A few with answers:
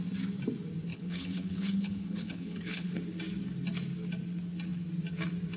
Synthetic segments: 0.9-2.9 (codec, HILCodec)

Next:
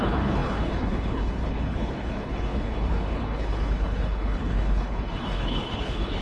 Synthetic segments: 0.0-6.2 (codec, HILCodec)

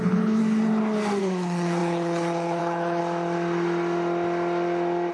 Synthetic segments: 0.0-0.4 (codec, HILCodec); 1.2-3.0

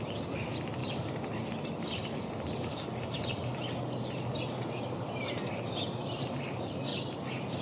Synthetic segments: none

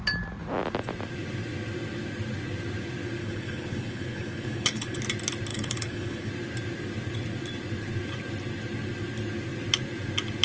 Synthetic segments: 3.2-5.0 (codec, HILCodec); 5.5-6.3

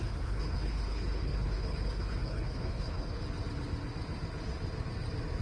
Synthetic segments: 0.0-3.2 (codec, HILCodec)

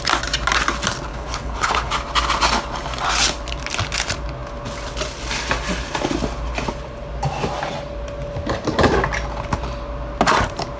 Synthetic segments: 1.1-1.9 (codec, HILCodec)

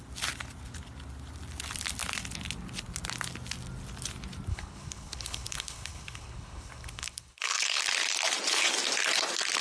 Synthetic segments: 4.5-7.8 (codec, HILCodec)